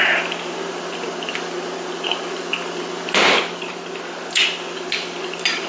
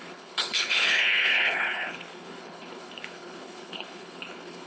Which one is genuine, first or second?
first